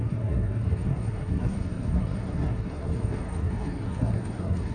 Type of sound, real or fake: fake